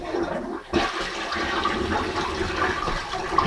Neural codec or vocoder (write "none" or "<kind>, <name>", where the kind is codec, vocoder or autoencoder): none